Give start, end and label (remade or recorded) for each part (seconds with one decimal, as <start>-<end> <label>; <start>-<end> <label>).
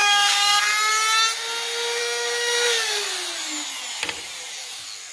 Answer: 0.0-0.6 remade; 0.6-2.0 recorded; 2.0-3.1 remade; 3.1-5.1 recorded